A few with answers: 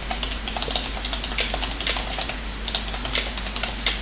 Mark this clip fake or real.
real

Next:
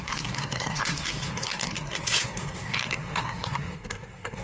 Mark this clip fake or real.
fake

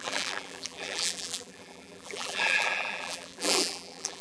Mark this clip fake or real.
fake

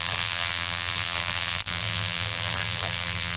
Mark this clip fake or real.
fake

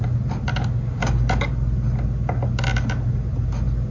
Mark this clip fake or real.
real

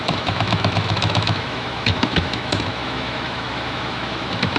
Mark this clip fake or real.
fake